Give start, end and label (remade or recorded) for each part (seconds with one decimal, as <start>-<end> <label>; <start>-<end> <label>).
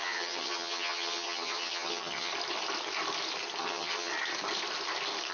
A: 0.0-2.3 remade; 2.3-3.6 recorded; 3.6-4.1 remade; 4.1-5.3 recorded